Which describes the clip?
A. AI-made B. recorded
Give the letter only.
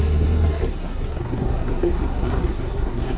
A